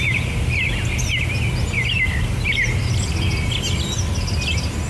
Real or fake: real